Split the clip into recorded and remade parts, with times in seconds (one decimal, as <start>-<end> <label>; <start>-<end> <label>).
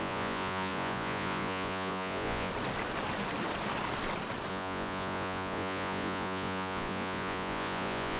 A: 0.0-2.5 remade; 2.5-4.5 recorded; 4.5-8.2 remade